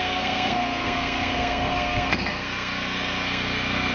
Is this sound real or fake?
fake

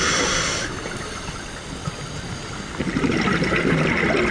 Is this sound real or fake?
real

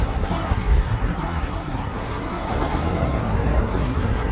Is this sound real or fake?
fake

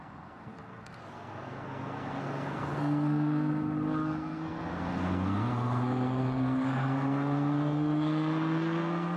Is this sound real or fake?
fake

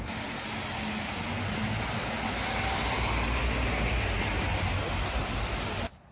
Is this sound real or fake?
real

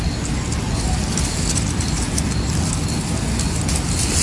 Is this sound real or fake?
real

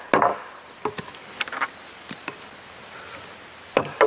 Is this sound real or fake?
real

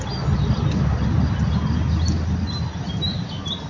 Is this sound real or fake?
real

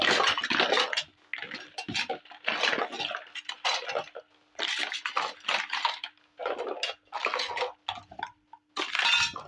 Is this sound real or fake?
real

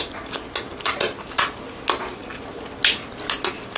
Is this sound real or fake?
real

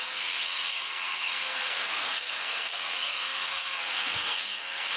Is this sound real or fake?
fake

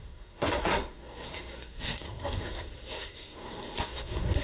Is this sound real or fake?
fake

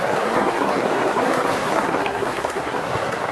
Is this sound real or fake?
fake